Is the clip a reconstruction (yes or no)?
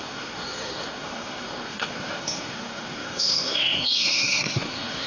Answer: yes